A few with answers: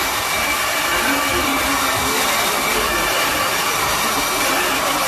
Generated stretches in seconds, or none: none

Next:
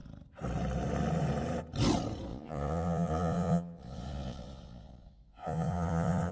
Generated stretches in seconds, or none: 2.3-6.3 (vocoder, Vocos)